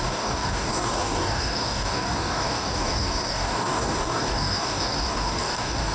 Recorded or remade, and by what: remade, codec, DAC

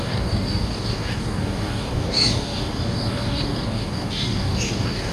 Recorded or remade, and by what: remade, codec, DAC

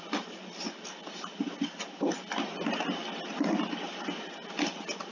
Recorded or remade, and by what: recorded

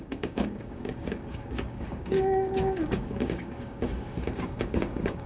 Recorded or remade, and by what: remade, codec, DAC